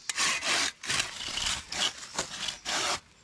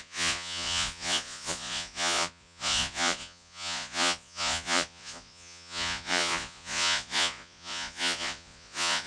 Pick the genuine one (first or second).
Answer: first